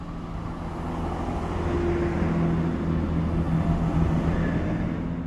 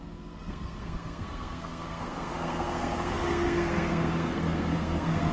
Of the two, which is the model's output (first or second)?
second